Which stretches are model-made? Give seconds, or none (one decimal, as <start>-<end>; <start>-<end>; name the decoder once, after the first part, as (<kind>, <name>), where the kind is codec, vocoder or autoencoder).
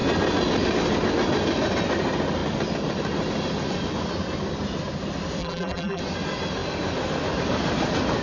5.4-6.0 (vocoder, BigVGAN v2)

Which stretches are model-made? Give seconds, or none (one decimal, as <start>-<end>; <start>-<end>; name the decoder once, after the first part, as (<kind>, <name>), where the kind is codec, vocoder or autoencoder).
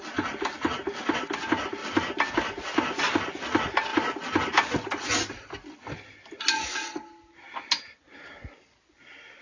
none